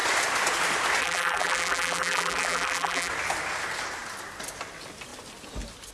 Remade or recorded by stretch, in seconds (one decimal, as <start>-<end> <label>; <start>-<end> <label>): 0.0-1.0 recorded; 1.0-3.1 remade; 3.1-5.9 recorded